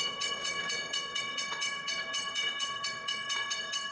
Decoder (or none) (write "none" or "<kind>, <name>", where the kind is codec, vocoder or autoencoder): vocoder, WaveNeXt